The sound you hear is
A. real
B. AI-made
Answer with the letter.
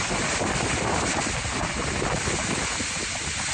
A